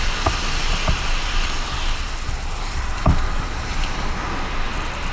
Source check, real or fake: real